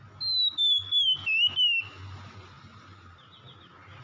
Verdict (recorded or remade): recorded